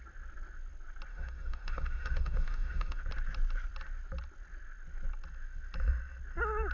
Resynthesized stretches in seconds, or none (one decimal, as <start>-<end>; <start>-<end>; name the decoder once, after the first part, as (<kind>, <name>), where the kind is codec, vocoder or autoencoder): 1.1-3.0 (autoencoder, DAC-VAE)